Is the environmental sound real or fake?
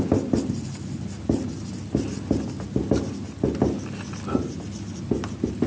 real